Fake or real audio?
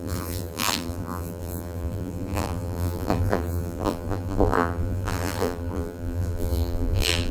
fake